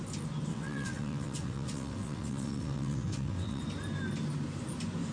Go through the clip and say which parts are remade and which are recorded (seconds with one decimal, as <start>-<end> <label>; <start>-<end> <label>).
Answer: 0.0-0.5 recorded; 0.5-3.6 remade; 3.6-5.1 recorded